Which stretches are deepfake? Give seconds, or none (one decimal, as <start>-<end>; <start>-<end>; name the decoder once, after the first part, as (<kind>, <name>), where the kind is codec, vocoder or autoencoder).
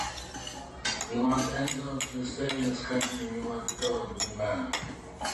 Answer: 3.9-4.4 (vocoder, BigVGAN v2)